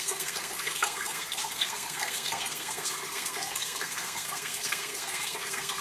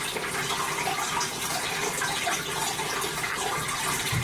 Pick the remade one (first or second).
first